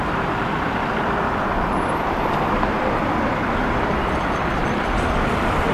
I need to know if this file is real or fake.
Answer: fake